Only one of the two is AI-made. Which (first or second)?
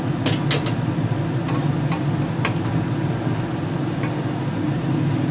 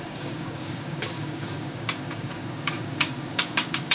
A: second